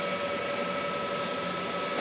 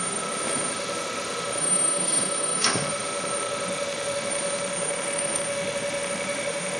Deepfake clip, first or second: second